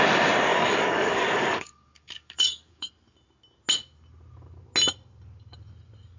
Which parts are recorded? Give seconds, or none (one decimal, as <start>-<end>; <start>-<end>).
0.0-0.5; 2.9-6.2